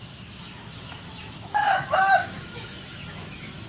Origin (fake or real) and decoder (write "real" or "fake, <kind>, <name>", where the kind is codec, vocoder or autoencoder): fake, autoencoder, DAC-VAE